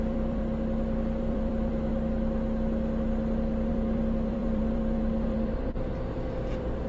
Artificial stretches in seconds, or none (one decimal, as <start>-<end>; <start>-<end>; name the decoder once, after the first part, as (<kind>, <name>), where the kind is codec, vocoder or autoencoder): 0.0-0.4 (vocoder, BigVGAN v2); 1.2-1.9; 3.7-6.9